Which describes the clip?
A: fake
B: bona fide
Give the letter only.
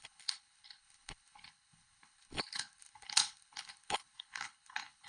A